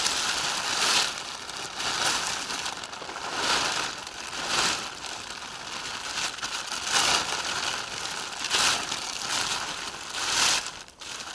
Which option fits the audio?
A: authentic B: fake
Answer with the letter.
A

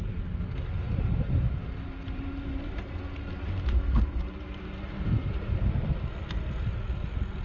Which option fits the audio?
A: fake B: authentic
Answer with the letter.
B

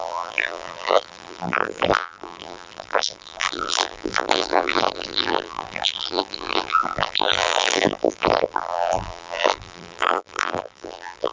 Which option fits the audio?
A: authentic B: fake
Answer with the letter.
B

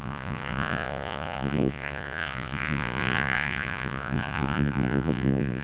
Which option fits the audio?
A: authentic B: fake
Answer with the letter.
B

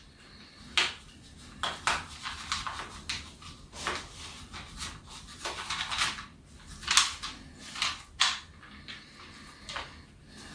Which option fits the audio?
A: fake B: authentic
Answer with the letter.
B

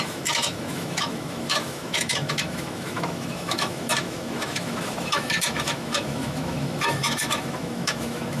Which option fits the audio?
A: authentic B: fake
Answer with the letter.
B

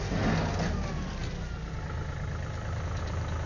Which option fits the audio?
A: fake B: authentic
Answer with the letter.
B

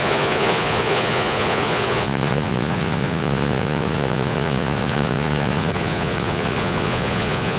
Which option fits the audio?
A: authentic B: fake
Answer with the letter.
B